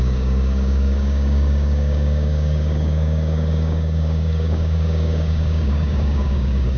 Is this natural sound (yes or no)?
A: no